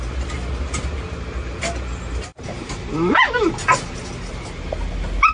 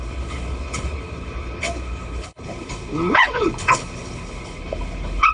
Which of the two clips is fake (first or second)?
second